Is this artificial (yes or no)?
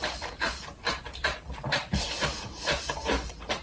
yes